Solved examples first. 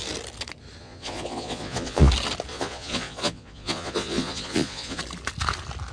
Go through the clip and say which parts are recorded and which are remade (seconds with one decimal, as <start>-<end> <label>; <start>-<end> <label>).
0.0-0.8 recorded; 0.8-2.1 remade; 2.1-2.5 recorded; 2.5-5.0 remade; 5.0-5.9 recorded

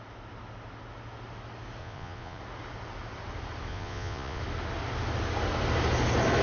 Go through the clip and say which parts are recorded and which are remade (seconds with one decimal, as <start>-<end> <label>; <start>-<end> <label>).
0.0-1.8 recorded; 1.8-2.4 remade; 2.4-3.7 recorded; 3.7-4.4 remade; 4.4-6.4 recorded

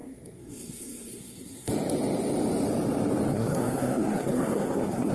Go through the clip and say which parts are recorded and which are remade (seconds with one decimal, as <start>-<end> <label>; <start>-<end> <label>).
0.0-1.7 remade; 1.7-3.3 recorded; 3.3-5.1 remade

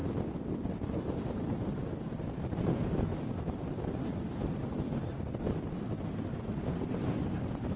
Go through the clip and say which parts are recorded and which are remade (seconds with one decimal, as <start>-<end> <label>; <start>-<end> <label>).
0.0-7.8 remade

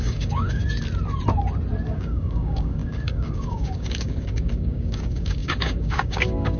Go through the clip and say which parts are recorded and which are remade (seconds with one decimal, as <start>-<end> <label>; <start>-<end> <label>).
0.0-0.6 remade; 0.6-1.9 recorded; 1.9-6.6 remade